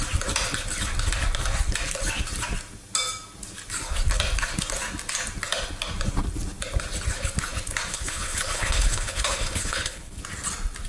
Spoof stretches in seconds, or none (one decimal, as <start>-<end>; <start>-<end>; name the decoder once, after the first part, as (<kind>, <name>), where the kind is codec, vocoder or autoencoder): 7.9-10.2 (codec, HILCodec)